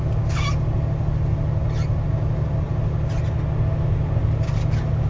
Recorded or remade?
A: recorded